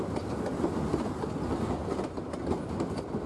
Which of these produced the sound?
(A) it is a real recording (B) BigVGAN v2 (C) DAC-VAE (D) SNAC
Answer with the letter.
A